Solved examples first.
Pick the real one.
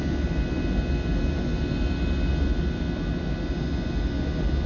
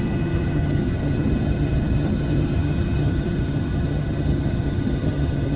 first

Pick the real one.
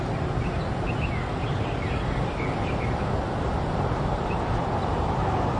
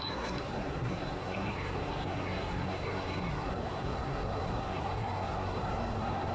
first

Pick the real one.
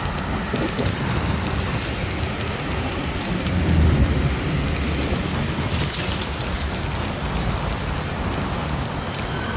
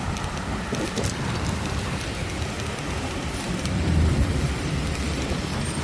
first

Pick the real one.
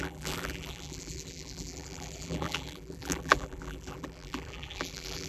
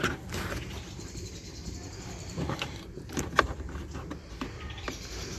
second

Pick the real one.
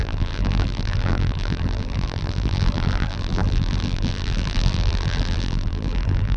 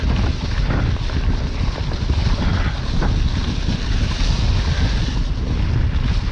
second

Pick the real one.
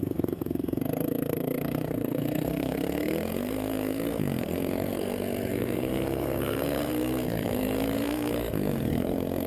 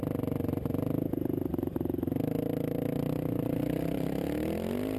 second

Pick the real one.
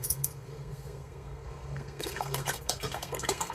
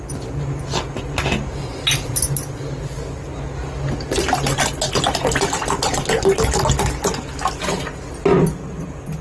second